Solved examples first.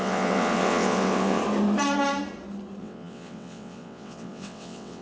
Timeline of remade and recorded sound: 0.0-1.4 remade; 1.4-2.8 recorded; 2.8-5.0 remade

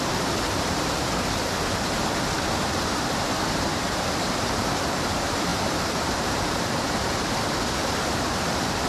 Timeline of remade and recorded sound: 0.0-2.0 remade; 2.0-3.2 recorded; 3.2-8.9 remade

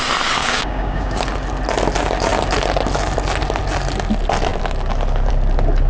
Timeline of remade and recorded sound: 0.0-0.4 recorded; 0.4-1.2 remade; 1.2-5.9 recorded

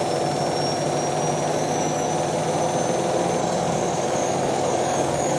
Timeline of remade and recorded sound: 0.0-1.5 recorded; 1.5-2.1 remade; 2.1-3.4 recorded; 3.4-5.4 remade

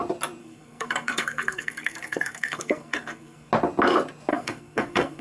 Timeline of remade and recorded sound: 0.0-0.4 recorded; 0.4-3.5 remade; 3.5-4.3 recorded; 4.3-5.2 remade

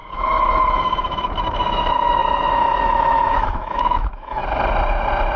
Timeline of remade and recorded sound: 0.0-4.4 remade; 4.4-5.4 recorded

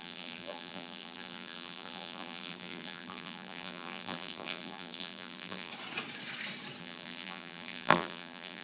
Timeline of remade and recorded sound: 0.0-5.7 remade; 5.7-6.8 recorded; 6.8-8.6 remade

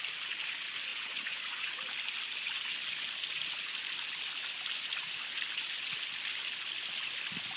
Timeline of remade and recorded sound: 0.0-0.9 recorded; 0.9-1.7 remade; 1.7-7.6 recorded